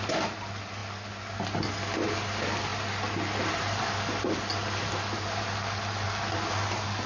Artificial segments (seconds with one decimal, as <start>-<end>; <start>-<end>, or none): none